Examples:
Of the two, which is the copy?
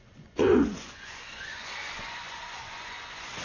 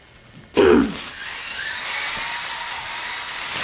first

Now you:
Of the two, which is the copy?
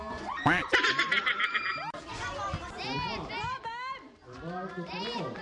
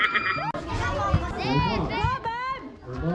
first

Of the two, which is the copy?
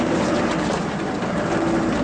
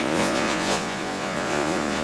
second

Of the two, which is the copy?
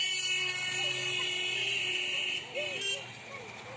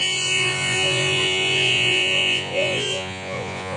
second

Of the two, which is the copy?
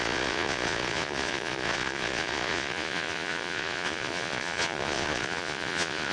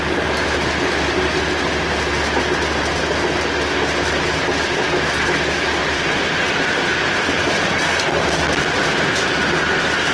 first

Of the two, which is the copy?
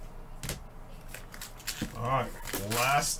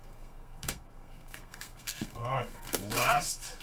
second